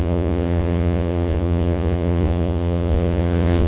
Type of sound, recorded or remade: remade